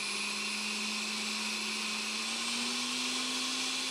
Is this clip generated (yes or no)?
no